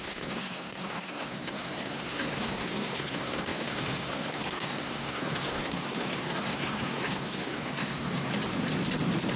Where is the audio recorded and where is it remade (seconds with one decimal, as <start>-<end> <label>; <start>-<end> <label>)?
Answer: 0.0-8.3 remade; 8.3-9.4 recorded